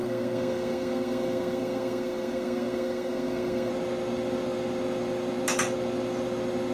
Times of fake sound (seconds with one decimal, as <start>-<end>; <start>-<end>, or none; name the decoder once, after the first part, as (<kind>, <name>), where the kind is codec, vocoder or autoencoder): 0.0-3.7 (codec, SNAC)